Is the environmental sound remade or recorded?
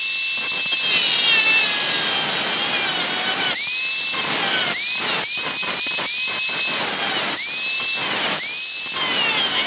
recorded